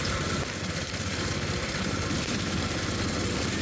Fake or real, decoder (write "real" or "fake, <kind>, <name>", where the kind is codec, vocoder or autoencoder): real